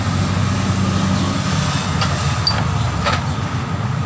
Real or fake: real